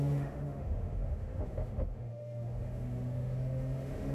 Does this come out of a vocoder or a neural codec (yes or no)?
yes